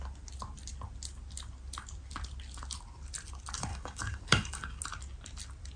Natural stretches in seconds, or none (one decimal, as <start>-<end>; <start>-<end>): 0.0-3.7; 4.8-5.8